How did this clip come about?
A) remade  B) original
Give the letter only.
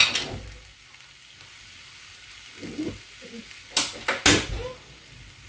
B